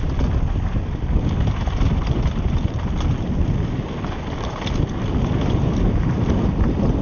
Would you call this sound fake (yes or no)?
no